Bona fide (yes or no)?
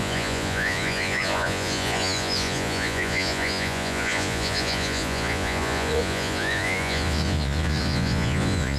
no